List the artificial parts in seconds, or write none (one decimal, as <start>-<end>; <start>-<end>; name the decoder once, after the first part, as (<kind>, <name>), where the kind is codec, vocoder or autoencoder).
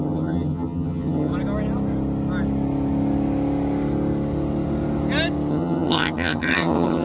0.0-1.3 (vocoder, HiFi-GAN); 5.5-7.0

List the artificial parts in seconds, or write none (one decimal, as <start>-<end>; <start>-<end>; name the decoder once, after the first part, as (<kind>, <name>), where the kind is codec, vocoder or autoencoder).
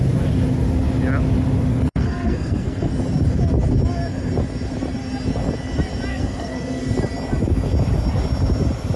1.7-3.0 (codec, SNAC); 6.1-6.8